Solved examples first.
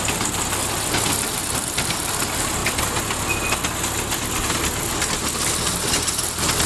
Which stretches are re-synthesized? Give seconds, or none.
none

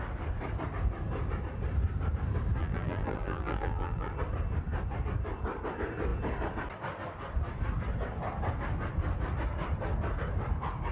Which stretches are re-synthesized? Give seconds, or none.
2.6-4.1 (vocoder, BigVGAN v2)

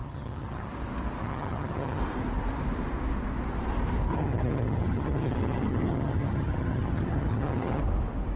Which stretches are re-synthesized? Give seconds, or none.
0.0-0.7 (vocoder, HiFi-GAN); 1.2-2.0; 4.1-7.8

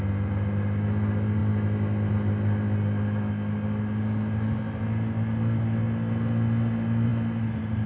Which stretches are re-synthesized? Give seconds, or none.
none

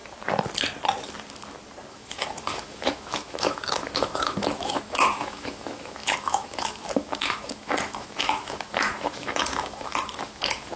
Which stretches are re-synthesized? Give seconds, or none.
1.9-10.8 (autoencoder, DAC-VAE)

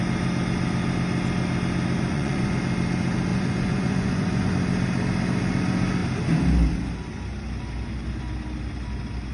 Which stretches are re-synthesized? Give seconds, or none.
2.1-2.6 (vocoder, Vocos); 3.3-4.5

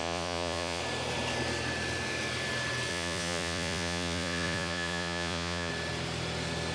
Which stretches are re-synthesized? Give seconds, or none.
0.0-0.8 (vocoder, Vocos); 2.9-5.7